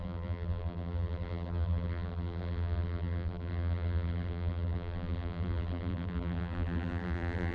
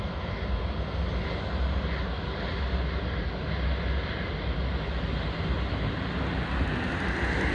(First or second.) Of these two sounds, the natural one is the second